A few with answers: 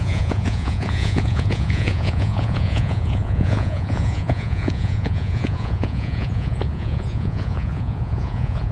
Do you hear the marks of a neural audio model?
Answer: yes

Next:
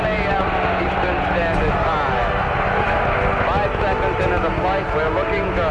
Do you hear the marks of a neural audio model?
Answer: no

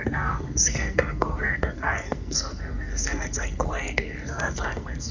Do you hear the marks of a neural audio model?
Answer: yes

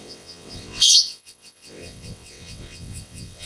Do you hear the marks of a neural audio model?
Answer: yes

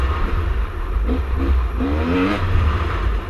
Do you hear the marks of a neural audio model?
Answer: yes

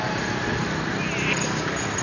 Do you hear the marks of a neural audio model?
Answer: no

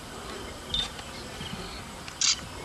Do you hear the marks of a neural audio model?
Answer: no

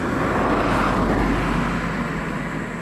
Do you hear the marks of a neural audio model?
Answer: no